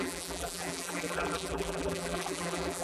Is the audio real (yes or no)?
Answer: no